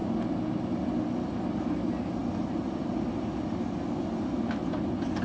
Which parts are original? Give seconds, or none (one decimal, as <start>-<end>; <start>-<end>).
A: 0.0-5.2